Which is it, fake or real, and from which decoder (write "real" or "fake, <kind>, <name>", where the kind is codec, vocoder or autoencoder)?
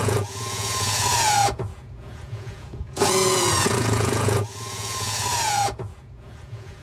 fake, vocoder, Vocos